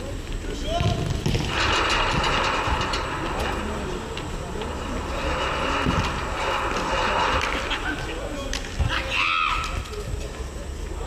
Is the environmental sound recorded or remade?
recorded